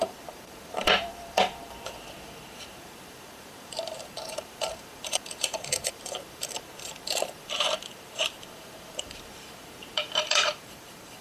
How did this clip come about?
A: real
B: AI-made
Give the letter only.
B